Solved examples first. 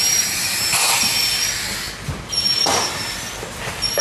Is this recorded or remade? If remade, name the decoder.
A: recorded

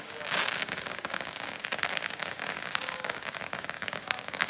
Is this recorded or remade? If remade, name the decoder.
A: remade, codec, DAC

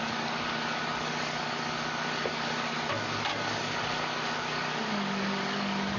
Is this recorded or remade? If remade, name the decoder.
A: remade, codec, DAC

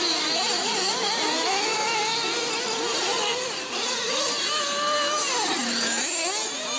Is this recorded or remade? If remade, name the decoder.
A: recorded